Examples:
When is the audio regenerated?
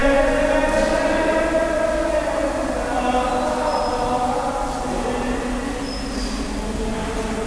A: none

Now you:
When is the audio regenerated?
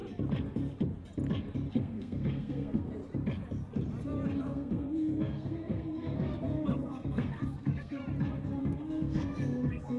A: 1.7-3.0 (codec, SNAC); 4.4-8.0; 8.6-10.0